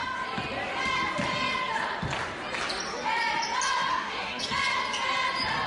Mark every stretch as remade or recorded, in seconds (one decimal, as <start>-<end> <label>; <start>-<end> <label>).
0.0-3.9 recorded; 3.9-4.4 remade; 4.4-5.7 recorded